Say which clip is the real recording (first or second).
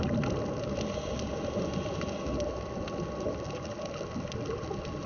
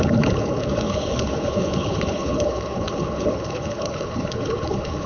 first